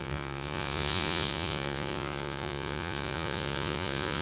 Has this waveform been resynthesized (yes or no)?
yes